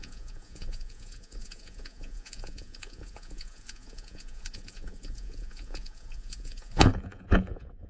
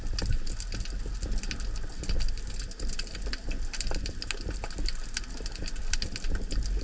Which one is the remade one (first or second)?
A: first